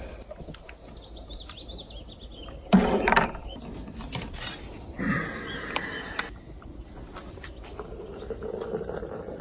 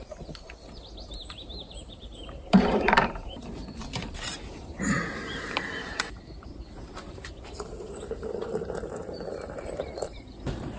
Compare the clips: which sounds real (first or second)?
first